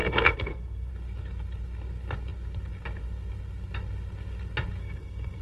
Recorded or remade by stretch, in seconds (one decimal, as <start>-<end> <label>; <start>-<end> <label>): 0.0-0.9 remade; 0.9-4.8 recorded; 4.8-5.4 remade